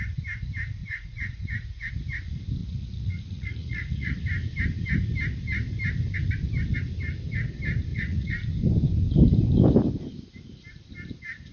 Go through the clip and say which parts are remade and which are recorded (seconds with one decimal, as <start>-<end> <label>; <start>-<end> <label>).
0.0-0.8 recorded; 0.8-1.9 remade; 1.9-2.6 recorded; 2.6-4.2 remade; 4.2-7.9 recorded; 7.9-8.5 remade; 8.5-11.5 recorded